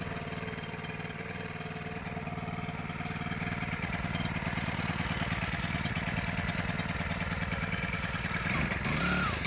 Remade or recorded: recorded